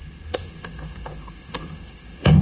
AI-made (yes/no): yes